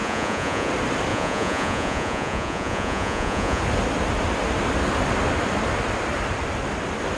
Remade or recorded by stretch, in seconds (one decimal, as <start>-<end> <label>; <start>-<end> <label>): 0.0-0.7 remade; 0.7-1.1 recorded; 1.1-3.6 remade; 3.6-7.2 recorded